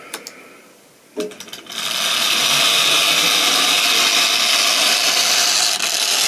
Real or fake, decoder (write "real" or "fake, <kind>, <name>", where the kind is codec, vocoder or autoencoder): real